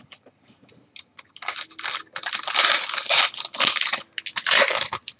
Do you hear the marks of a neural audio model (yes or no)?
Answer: no